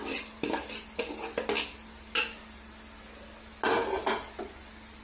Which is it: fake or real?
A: real